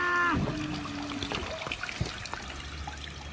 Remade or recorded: recorded